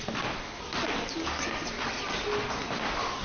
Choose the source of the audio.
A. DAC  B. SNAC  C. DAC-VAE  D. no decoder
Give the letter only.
D